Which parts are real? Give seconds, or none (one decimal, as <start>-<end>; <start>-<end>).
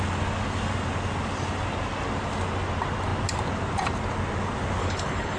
0.0-4.8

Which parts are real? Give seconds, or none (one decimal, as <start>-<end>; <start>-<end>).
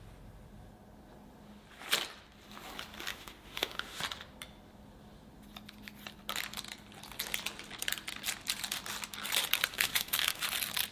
0.0-3.1; 4.0-9.7; 10.4-10.9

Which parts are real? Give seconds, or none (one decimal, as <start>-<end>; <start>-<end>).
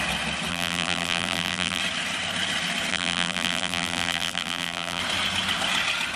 0.0-0.5; 1.8-2.9; 5.0-6.2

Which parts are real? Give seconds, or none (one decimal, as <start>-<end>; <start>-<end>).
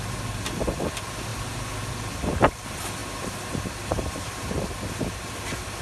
0.0-5.8